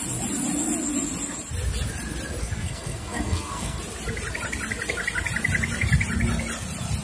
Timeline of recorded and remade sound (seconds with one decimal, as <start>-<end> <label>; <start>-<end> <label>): 0.0-2.4 recorded; 2.4-3.8 remade; 3.8-7.0 recorded